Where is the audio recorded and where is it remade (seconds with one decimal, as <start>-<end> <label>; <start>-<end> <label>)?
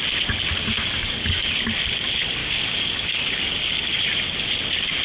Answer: 0.0-0.6 recorded; 0.6-1.5 remade; 1.5-2.4 recorded; 2.4-4.0 remade; 4.0-5.0 recorded